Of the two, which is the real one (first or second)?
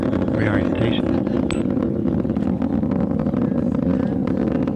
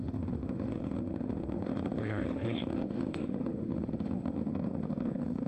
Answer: first